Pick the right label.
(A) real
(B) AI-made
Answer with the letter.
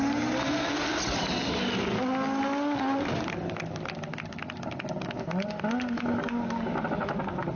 A